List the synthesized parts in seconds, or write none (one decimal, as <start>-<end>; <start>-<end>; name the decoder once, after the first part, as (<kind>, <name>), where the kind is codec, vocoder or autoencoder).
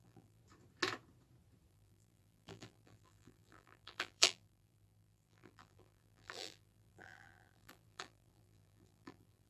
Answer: 0.0-0.4 (vocoder, BigVGAN v2); 1.7-9.5